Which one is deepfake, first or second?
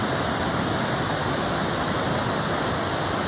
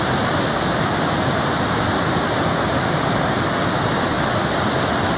first